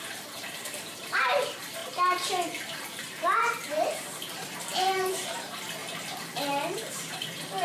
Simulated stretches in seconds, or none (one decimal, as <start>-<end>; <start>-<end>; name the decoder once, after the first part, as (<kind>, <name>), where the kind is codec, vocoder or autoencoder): 0.0-1.8 (vocoder, BigVGAN v2); 2.7-5.8; 6.5-7.6